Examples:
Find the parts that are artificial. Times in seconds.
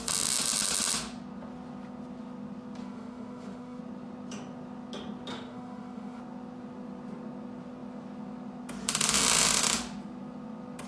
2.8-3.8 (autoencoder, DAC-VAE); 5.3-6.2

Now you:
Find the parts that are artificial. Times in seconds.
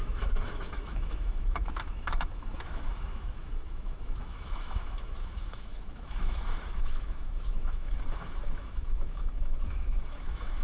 0.0-10.6 (autoencoder, DAC-VAE)